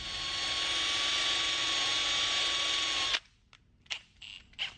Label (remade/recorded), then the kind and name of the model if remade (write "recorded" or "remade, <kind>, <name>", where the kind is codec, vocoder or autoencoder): recorded